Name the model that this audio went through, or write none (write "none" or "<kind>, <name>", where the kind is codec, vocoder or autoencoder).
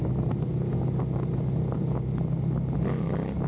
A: none